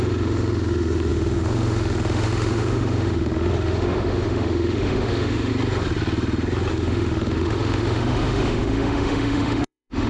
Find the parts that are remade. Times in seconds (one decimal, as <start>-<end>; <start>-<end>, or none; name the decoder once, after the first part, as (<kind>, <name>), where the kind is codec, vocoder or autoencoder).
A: 0.0-5.5 (autoencoder, DAC-VAE); 6.7-10.1